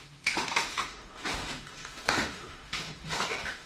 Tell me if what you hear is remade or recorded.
remade